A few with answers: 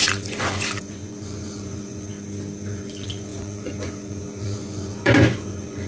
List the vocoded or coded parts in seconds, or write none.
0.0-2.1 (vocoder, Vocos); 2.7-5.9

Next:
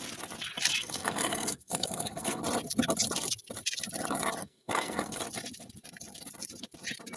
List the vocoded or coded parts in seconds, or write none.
0.8-2.4 (codec, SNAC); 4.4-5.2

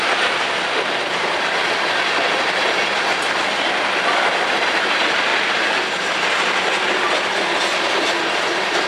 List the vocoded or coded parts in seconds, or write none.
5.3-8.9 (vocoder, BigVGAN v2)